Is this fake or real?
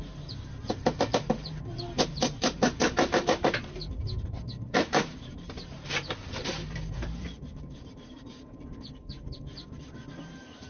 fake